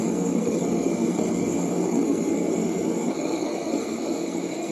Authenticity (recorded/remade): remade